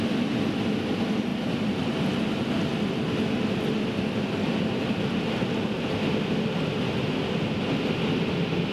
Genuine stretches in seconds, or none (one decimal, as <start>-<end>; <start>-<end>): 0.0-8.7

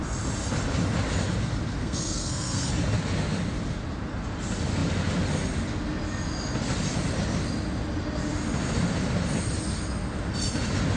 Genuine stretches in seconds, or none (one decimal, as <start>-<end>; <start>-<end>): 0.0-1.8; 2.7-11.0

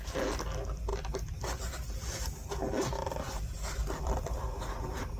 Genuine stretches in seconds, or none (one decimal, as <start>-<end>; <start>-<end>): 0.0-5.2

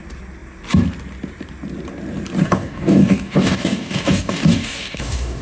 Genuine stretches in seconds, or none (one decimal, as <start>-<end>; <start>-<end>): 0.0-2.4

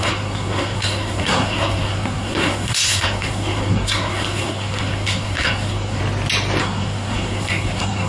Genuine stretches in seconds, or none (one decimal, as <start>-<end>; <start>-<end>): 6.0-6.6

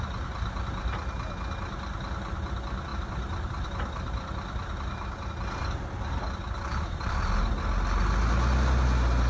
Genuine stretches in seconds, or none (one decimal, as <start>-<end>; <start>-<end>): 0.0-2.9; 5.3-6.7; 7.5-9.3

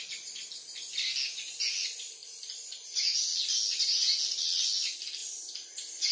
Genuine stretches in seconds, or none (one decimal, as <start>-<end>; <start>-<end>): 0.0-6.1